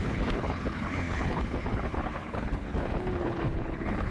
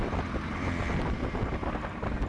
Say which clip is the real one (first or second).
second